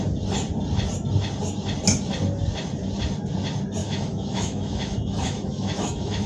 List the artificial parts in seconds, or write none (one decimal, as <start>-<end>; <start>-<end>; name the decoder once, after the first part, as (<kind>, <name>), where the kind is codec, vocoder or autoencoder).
3.8-6.3 (autoencoder, DAC-VAE)